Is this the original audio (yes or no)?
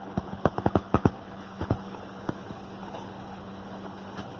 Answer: no